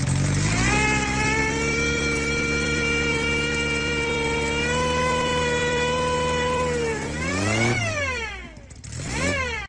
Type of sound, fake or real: fake